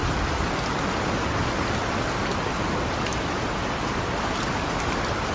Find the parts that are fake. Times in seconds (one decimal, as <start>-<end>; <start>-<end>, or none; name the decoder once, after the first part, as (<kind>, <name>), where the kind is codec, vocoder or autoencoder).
none